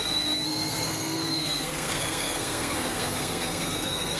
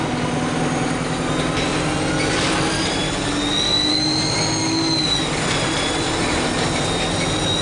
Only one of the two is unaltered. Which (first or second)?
second